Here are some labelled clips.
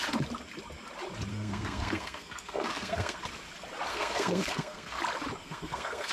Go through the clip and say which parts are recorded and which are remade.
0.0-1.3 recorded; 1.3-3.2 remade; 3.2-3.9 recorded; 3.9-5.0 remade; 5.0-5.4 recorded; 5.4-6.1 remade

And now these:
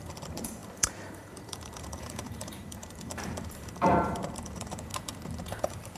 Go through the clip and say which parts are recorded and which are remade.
0.0-4.9 remade; 4.9-5.6 recorded; 5.6-6.0 remade

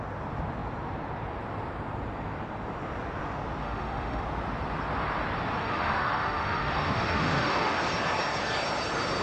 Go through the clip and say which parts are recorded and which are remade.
0.0-3.6 recorded; 3.6-4.2 remade; 4.2-5.6 recorded; 5.6-7.8 remade; 7.8-9.2 recorded